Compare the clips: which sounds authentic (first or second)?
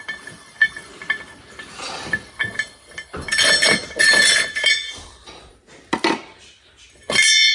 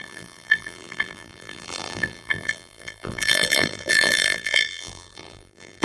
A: first